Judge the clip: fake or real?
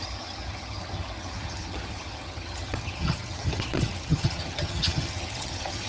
fake